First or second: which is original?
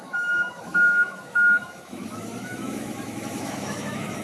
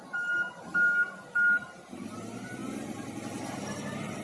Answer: second